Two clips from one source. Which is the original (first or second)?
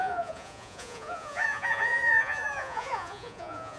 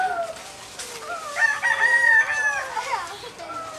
second